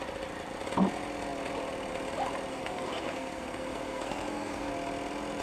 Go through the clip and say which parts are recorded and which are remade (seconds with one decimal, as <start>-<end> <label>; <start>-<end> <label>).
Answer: 0.0-2.5 recorded; 2.5-4.7 remade; 4.7-5.4 recorded